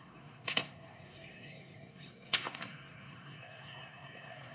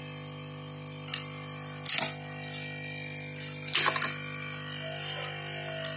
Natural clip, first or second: second